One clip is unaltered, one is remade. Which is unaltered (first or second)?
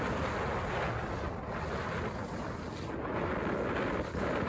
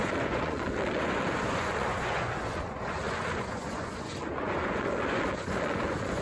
first